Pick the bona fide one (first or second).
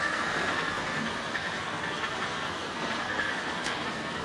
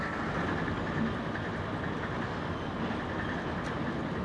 second